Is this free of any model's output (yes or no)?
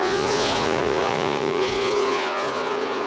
no